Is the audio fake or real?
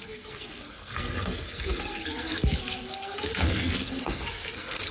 fake